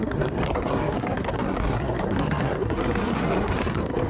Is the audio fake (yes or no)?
yes